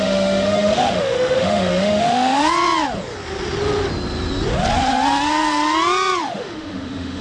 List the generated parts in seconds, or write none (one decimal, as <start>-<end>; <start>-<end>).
0.0-2.4; 6.2-7.2